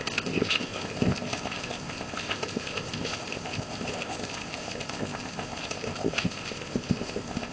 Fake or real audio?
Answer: fake